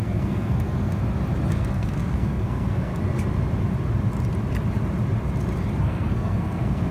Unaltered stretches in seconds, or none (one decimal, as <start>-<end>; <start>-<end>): 1.0-1.5; 2.9-5.8